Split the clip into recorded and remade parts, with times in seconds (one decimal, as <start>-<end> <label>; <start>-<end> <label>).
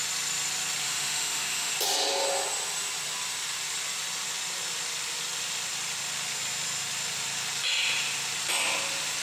0.0-0.8 recorded; 0.8-1.7 remade; 1.7-9.2 recorded